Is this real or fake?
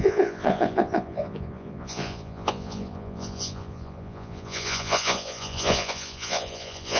fake